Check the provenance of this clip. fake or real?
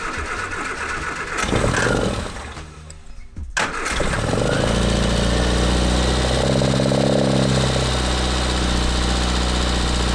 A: real